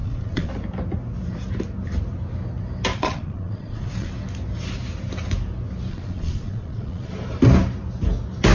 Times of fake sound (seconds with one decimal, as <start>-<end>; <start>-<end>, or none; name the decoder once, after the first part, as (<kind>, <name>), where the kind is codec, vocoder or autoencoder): 0.0-0.5 (vocoder, Vocos); 2.9-4.1; 5.9-7.1